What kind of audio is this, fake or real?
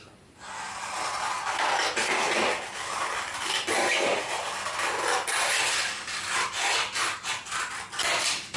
real